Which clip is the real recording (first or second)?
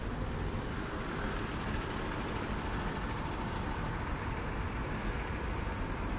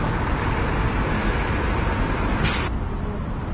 second